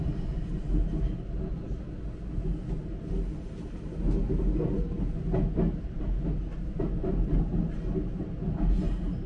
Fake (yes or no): no